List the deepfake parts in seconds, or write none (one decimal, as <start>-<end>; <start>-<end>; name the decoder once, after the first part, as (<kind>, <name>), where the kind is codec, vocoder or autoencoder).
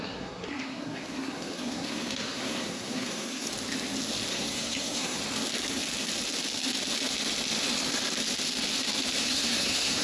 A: 0.0-3.5 (codec, SNAC); 4.3-5.2; 9.2-10.0